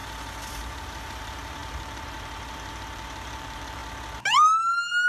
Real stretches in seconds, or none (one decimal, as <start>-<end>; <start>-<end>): 0.0-1.1; 3.8-5.1